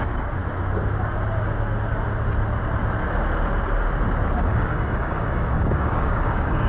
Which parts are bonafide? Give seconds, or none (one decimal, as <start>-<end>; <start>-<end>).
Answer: 0.4-4.4